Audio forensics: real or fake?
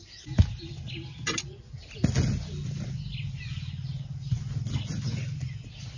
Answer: real